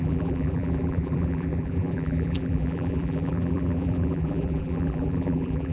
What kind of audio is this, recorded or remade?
remade